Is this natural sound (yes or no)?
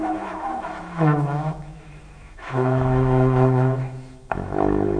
no